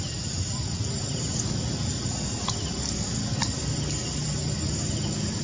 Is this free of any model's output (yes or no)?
no